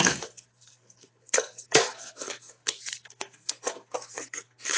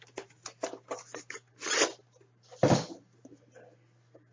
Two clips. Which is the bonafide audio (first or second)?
second